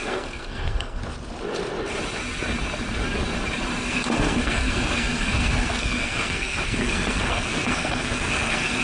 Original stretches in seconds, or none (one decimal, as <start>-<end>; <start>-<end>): 1.0-3.8